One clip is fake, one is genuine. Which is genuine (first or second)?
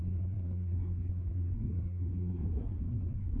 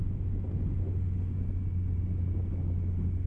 second